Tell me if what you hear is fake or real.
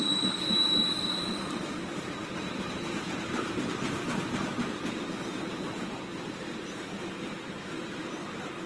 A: fake